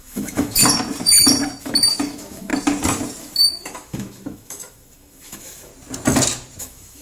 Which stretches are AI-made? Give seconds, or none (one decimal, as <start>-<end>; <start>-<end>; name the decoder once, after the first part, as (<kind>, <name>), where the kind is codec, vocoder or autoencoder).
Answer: 0.0-0.6 (autoencoder, DAC-VAE); 1.6-2.5; 3.2-5.7; 6.6-7.0